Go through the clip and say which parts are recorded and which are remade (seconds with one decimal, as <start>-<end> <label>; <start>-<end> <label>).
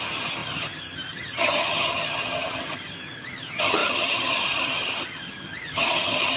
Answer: 0.0-6.4 remade